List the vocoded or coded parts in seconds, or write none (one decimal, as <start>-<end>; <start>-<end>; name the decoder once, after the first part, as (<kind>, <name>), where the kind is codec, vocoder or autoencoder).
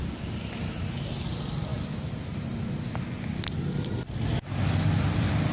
none